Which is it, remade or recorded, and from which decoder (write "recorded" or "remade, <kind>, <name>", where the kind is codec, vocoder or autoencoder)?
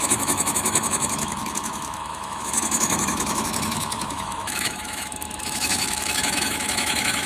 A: remade, autoencoder, DAC-VAE